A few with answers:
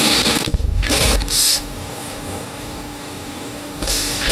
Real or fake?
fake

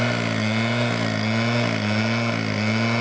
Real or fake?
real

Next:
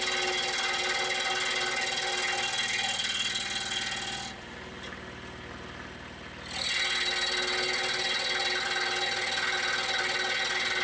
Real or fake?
real